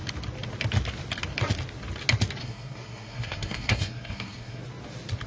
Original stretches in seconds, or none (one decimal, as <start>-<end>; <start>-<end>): 0.0-2.4; 4.6-5.3